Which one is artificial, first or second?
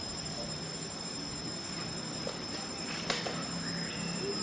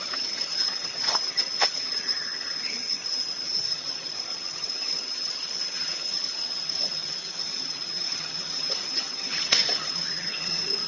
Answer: second